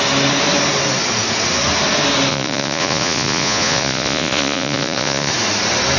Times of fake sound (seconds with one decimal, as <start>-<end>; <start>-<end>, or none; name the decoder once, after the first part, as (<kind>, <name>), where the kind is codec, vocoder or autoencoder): 2.3-5.3 (vocoder, Vocos)